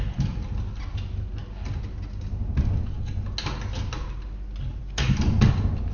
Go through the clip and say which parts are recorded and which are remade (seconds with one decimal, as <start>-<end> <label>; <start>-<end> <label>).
0.0-5.9 recorded